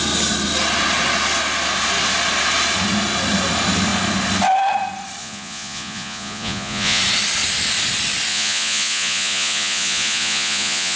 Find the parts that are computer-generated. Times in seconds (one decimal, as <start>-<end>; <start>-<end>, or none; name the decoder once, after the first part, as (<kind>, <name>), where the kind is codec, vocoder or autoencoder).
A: 5.2-7.0 (vocoder, Vocos); 8.3-11.0